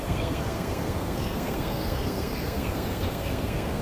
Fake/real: fake